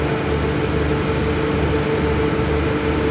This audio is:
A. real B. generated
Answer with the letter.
A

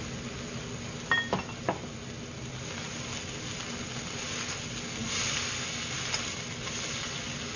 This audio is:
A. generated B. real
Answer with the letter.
B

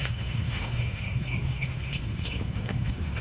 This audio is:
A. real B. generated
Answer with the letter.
B